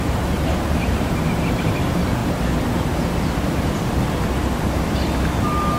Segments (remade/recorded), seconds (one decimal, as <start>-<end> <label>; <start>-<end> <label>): 0.0-2.2 remade; 2.2-5.8 recorded